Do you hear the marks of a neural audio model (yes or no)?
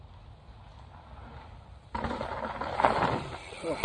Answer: no